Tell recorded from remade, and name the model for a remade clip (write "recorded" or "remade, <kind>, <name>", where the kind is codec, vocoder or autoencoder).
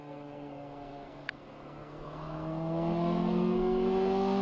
remade, codec, SNAC